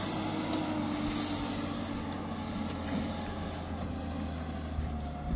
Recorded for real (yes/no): yes